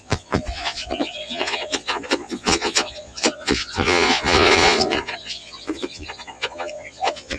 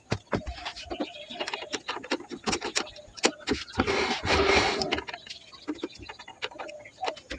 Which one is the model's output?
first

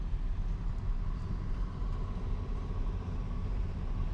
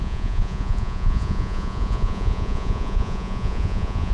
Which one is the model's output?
second